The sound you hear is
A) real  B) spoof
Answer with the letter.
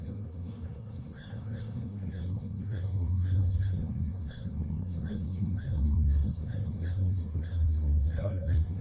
B